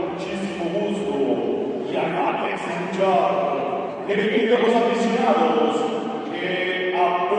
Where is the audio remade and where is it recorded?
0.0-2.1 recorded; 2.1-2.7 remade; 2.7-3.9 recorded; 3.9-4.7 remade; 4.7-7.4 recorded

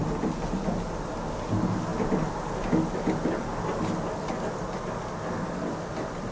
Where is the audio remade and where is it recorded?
0.0-6.3 recorded